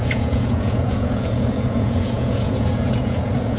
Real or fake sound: fake